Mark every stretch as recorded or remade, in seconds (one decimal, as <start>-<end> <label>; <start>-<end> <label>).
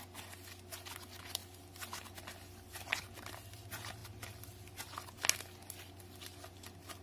0.0-7.0 recorded